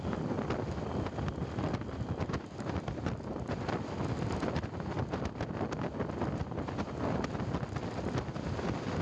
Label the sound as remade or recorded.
recorded